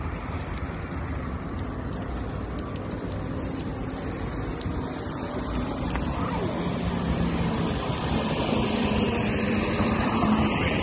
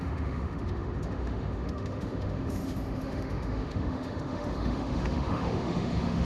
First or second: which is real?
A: first